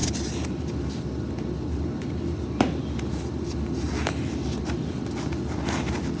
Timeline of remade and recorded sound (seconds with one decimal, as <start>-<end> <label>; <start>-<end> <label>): 0.0-6.2 recorded